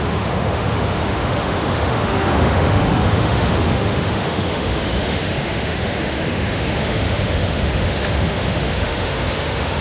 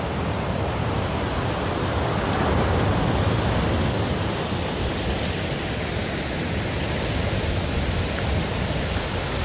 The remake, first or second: first